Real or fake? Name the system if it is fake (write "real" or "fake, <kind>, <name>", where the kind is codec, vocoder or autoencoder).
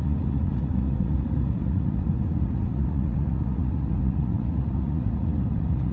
fake, vocoder, Vocos